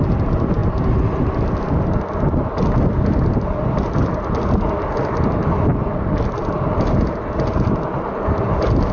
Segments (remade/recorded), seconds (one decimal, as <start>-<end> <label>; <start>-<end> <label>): 0.0-8.9 recorded